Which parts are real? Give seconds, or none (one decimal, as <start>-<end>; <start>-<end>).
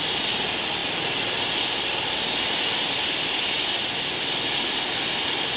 0.0-5.6